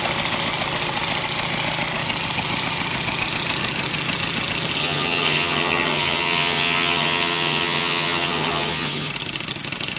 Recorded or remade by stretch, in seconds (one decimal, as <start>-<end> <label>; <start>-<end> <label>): 0.0-4.8 recorded; 4.8-9.1 remade; 9.1-10.0 recorded